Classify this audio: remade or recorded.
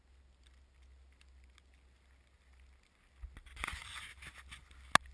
recorded